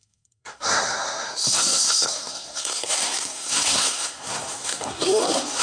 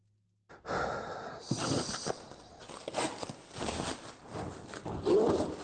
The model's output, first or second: first